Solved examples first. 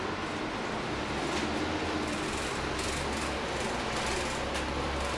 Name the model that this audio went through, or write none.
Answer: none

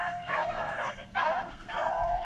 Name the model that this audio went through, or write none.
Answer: codec, SNAC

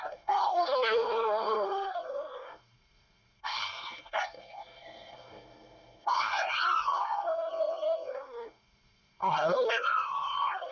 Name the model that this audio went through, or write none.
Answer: codec, SNAC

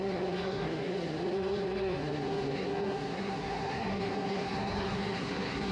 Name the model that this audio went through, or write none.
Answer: codec, SNAC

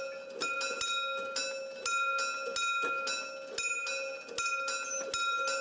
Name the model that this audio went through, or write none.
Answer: none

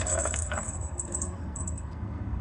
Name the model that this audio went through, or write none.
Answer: codec, SNAC